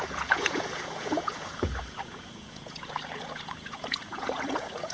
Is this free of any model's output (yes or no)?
no